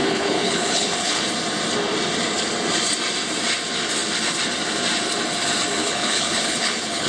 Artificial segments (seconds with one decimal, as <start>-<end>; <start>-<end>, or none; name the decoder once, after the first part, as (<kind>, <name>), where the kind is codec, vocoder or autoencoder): 0.0-1.2 (codec, HILCodec); 5.8-7.1